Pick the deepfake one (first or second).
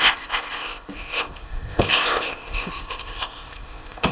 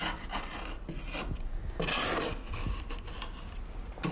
first